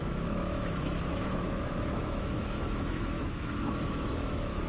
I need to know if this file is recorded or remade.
remade